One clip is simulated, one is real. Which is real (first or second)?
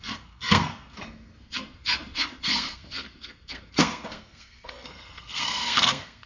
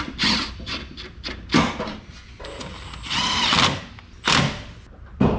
second